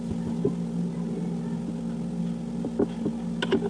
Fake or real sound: real